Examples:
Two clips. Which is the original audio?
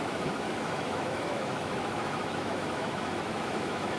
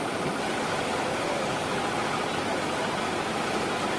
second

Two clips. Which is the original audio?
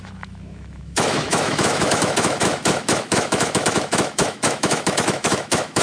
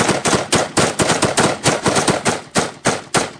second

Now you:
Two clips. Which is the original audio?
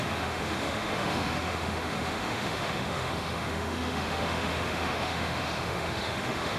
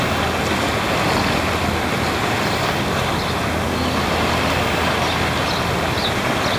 second